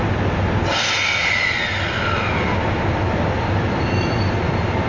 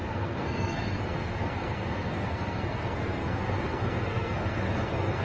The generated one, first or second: second